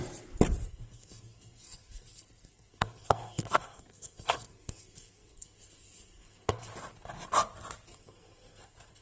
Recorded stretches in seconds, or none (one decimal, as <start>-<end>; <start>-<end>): 0.0-0.7; 6.7-7.9